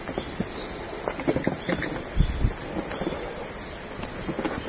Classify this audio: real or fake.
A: real